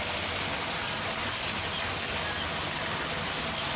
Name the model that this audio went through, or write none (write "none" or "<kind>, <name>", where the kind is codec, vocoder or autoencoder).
none